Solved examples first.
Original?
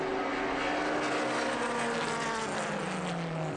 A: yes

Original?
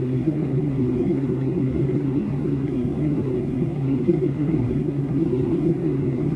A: no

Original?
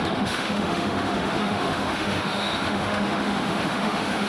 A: no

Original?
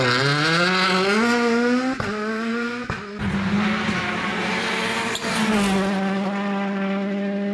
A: yes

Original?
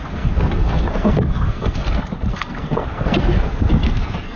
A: no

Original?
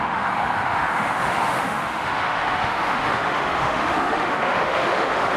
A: no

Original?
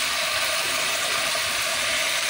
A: yes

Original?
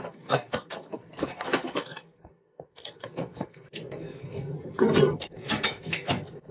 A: no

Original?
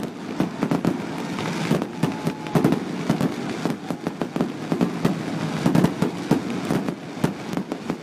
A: yes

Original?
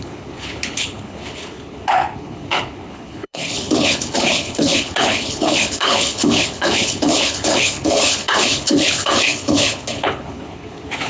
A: no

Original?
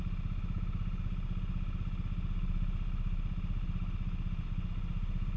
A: yes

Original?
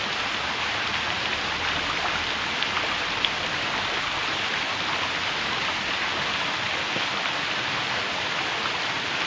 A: yes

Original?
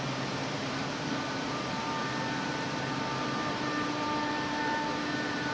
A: no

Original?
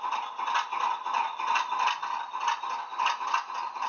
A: yes